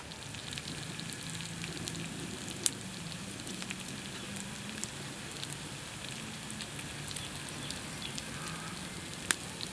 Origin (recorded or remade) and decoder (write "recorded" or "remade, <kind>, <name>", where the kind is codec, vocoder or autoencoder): recorded